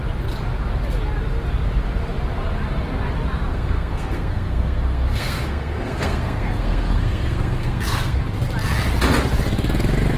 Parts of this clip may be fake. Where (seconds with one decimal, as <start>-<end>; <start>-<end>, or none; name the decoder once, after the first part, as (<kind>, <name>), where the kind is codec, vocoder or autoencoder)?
3.5-8.2 (codec, SNAC)